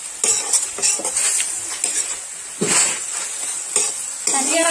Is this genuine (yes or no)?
yes